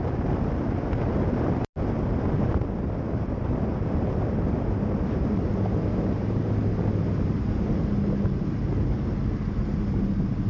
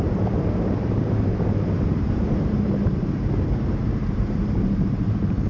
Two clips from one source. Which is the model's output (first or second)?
second